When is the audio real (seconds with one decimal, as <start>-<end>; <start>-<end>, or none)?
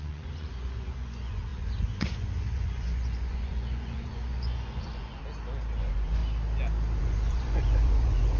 5.2-5.8; 6.2-7.0